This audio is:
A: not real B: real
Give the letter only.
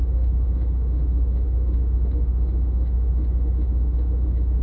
A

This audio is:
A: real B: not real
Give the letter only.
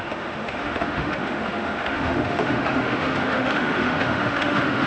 B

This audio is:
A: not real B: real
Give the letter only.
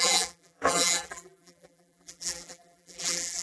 A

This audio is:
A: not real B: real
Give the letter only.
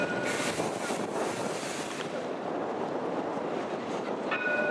B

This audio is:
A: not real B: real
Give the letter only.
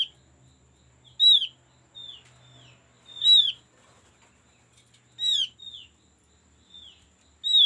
B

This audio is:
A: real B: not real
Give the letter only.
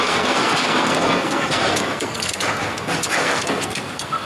B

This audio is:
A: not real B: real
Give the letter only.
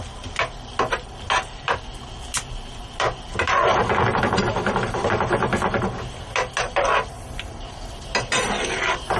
B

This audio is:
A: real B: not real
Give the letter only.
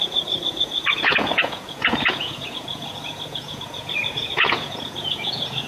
B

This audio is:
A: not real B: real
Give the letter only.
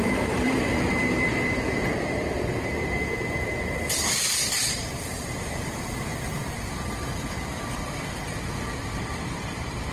A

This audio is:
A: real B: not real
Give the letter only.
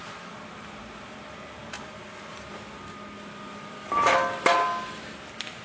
A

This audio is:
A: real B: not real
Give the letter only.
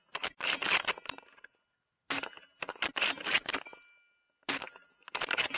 A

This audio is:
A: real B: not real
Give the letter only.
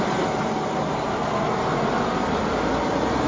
A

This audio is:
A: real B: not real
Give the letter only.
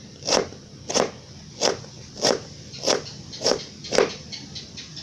A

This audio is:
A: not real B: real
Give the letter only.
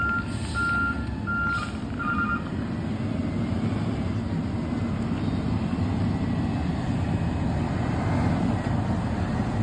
B